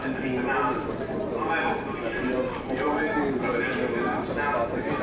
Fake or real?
real